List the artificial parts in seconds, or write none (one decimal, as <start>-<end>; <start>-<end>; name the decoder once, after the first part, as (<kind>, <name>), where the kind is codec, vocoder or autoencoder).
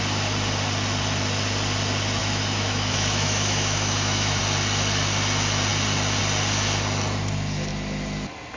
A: 2.2-4.4 (autoencoder, DAC-VAE)